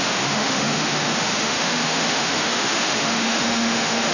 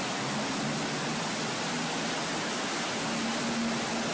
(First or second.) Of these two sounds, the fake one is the first